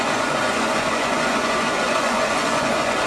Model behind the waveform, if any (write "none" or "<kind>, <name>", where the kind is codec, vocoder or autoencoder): vocoder, Vocos